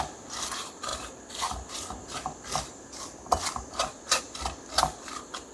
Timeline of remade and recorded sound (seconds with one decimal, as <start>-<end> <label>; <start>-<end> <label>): 0.0-5.5 recorded